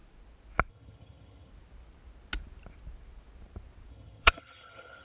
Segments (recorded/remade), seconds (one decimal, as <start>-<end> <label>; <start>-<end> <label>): 0.0-0.7 recorded; 0.7-1.5 remade; 1.5-3.9 recorded; 3.9-5.0 remade